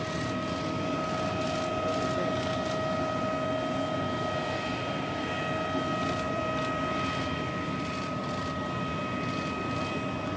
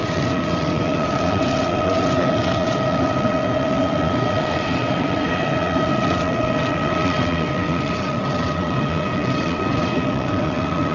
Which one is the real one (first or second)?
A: first